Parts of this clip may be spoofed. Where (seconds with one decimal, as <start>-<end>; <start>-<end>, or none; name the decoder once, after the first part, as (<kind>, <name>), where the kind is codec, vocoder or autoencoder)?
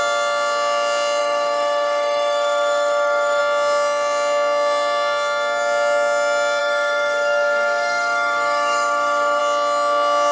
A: 1.2-3.4 (autoencoder, DAC-VAE); 6.6-9.4